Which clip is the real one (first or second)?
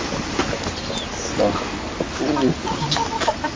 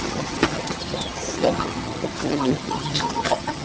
first